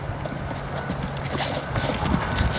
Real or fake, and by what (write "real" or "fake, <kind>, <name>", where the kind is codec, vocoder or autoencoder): real